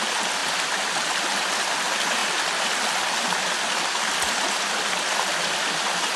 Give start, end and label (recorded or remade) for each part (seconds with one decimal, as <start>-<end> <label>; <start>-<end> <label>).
0.0-6.2 recorded